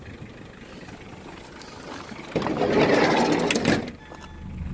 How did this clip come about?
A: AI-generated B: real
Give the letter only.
B